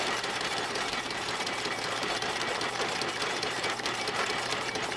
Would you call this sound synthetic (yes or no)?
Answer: yes